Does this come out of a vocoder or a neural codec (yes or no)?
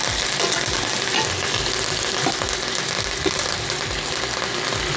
no